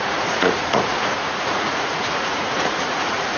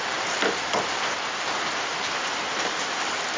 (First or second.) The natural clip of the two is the second